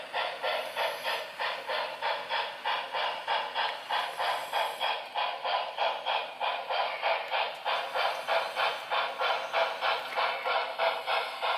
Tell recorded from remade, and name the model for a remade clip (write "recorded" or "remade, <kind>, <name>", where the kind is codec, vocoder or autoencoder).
recorded